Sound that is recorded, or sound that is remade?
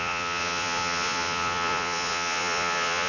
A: remade